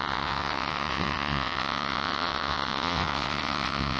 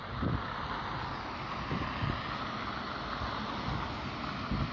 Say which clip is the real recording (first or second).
second